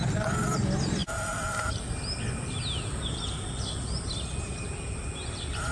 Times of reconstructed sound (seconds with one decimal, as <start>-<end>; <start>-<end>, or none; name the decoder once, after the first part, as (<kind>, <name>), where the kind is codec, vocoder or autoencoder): none